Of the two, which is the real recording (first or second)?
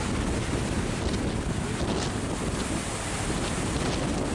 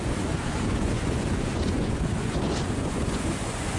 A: first